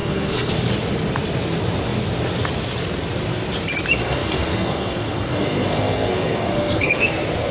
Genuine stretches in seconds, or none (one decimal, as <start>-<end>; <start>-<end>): 0.5-4.0; 7.1-7.5